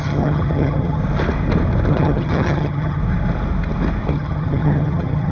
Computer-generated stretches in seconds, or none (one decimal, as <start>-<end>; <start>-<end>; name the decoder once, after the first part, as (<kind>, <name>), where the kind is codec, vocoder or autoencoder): 0.0-1.0 (vocoder, HiFi-GAN); 1.9-3.0; 4.1-5.3